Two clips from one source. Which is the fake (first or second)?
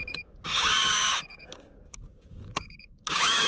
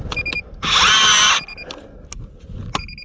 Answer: first